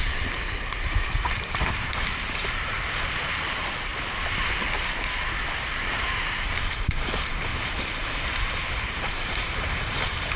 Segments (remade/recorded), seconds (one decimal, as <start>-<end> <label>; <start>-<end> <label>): 0.0-3.9 remade; 3.9-5.7 recorded; 5.7-7.5 remade; 7.5-8.8 recorded; 8.8-10.4 remade